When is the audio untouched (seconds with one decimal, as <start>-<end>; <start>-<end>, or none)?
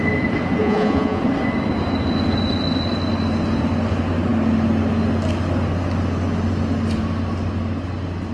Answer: 0.0-0.6; 1.2-8.3